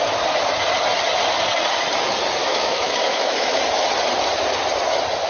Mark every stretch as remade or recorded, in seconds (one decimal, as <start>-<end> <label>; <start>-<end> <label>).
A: 0.0-2.4 recorded; 2.4-3.6 remade; 3.6-5.3 recorded